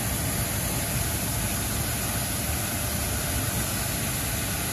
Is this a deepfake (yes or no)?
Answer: no